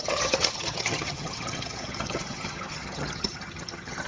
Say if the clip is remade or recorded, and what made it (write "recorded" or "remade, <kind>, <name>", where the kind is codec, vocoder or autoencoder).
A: remade, vocoder, HiFi-GAN